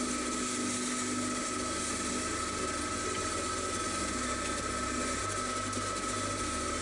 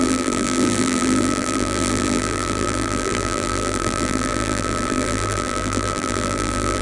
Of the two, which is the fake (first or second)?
second